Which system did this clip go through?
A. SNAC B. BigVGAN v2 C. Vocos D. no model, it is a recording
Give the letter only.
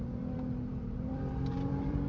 B